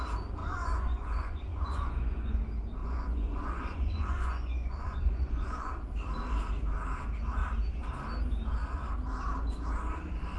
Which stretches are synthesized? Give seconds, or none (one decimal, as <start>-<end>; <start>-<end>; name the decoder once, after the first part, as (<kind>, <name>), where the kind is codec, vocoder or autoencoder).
0.4-2.4 (vocoder, Vocos); 2.8-5.7